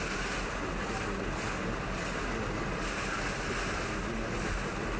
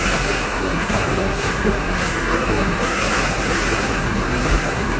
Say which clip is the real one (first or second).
first